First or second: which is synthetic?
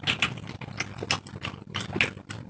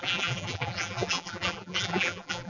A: second